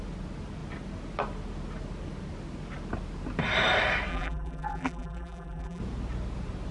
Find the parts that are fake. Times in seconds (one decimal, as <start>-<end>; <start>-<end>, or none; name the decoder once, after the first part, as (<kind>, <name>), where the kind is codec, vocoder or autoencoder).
4.1-5.8 (vocoder, BigVGAN v2)